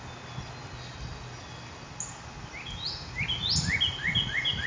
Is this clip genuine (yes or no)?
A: yes